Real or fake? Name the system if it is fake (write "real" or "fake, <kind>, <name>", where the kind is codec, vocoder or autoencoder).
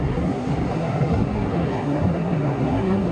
fake, codec, SNAC